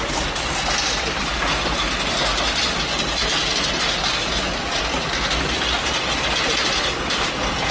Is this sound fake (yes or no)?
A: no